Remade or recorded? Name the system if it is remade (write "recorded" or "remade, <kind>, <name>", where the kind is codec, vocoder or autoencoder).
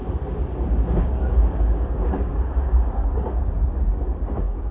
remade, codec, DAC